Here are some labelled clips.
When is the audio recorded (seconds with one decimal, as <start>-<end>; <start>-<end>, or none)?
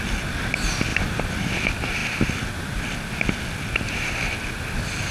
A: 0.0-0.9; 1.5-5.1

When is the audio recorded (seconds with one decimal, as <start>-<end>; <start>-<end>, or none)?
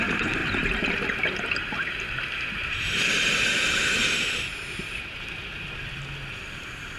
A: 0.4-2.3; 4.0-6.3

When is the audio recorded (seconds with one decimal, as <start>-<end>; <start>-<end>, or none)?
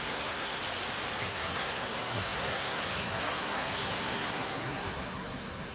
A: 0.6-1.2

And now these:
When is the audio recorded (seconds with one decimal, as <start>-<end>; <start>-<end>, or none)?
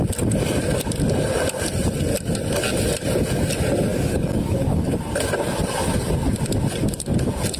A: 0.0-3.9; 5.0-7.6